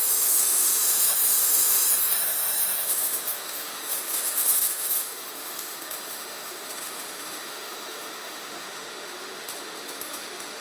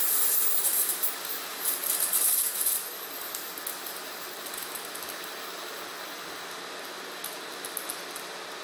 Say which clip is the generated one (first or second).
first